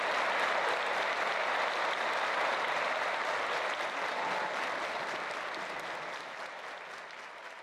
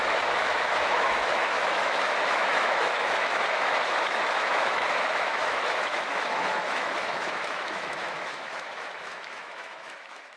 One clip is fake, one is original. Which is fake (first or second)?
second